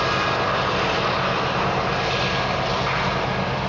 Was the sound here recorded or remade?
recorded